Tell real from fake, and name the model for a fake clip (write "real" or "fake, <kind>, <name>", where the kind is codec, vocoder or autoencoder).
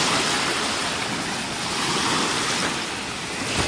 real